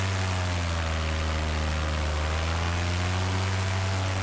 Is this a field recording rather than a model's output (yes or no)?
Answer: yes